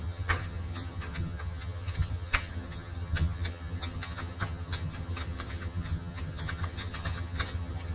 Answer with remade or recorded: remade